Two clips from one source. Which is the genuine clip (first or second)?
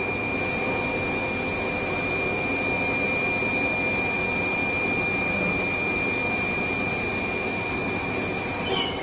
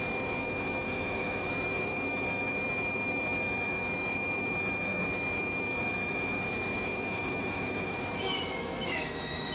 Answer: first